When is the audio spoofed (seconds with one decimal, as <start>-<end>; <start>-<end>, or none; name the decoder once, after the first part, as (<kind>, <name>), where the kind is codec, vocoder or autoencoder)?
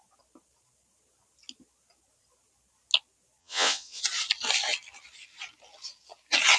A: 3.4-4.0 (vocoder, WaveNeXt)